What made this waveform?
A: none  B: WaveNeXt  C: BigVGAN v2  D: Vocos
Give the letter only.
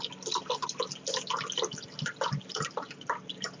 A